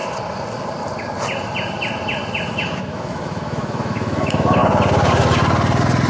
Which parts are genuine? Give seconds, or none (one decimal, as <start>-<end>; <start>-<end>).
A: 0.0-2.5; 4.6-6.1